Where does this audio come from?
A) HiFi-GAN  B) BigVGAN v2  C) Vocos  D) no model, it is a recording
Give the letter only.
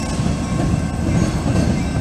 D